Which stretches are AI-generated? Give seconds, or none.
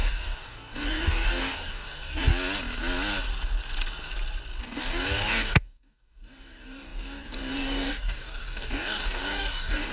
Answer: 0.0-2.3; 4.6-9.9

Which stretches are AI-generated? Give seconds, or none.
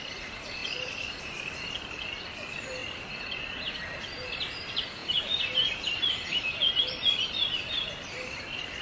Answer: 0.0-2.8; 3.7-8.8